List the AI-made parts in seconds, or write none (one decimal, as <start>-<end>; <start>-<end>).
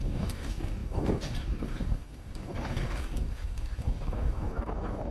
0.0-5.1